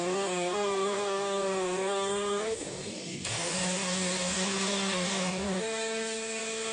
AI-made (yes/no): yes